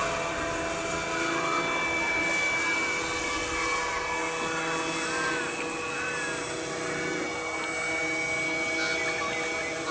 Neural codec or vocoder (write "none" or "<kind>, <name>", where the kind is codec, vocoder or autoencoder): none